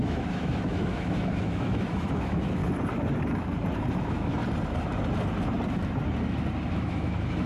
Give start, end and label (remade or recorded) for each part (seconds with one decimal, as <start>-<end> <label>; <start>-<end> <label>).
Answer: 0.0-2.6 remade; 2.6-4.0 recorded; 4.0-4.4 remade; 4.4-6.7 recorded; 6.7-7.5 remade